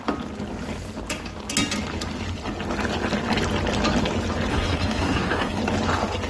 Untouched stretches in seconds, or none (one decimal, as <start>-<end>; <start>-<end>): 0.0-4.5; 5.6-6.3